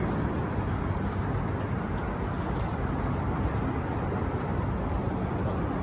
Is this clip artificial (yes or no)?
no